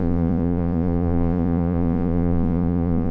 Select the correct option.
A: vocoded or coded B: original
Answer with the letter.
A